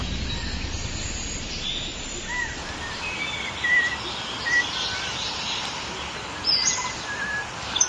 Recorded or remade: remade